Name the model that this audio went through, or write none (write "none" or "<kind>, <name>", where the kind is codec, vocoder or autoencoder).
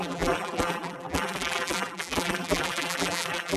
vocoder, BigVGAN v2